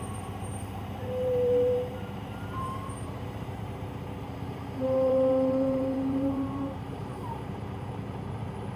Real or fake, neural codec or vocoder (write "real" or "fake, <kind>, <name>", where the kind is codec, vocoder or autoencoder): fake, vocoder, BigVGAN v2